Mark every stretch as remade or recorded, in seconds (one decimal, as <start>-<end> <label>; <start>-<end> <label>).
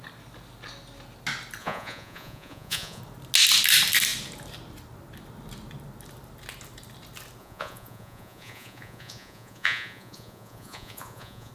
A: 0.0-1.6 recorded; 1.6-3.0 remade; 3.0-7.4 recorded; 7.4-11.5 remade